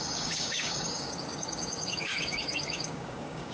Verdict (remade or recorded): remade